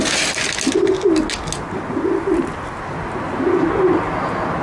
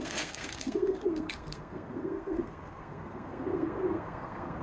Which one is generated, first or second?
second